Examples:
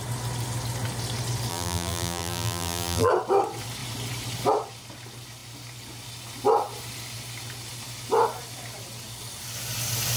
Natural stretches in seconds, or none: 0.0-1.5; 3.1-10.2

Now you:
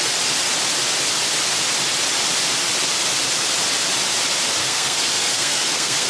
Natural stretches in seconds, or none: 0.0-4.6